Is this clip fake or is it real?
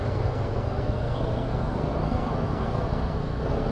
fake